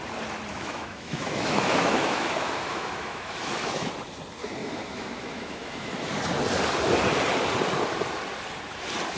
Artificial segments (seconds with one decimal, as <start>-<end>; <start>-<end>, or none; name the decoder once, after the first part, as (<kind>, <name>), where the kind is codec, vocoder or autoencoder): 0.5-3.9 (autoencoder, DAC-VAE); 4.6-6.1